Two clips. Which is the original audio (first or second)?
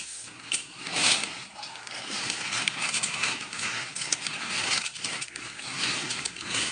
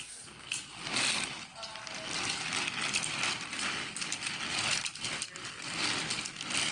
second